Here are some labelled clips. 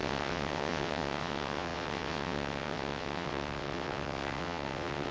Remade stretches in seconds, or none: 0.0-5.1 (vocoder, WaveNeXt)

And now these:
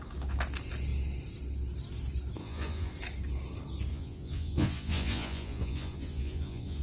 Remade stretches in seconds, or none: 2.4-2.9 (vocoder, Vocos); 3.9-6.8

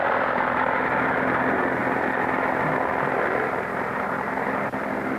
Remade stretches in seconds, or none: none